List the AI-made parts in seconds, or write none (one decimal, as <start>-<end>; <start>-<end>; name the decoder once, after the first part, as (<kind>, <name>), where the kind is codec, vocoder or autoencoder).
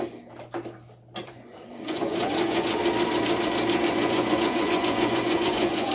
1.2-2.8 (vocoder, Vocos); 3.9-5.9